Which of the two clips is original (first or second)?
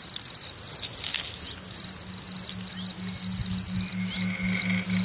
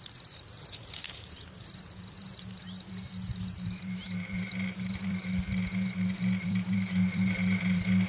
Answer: first